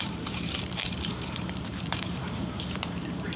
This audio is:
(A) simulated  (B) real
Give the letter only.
A